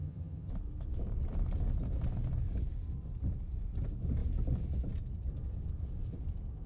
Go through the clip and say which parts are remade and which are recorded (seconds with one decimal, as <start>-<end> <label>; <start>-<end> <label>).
0.0-0.5 remade; 0.5-6.7 recorded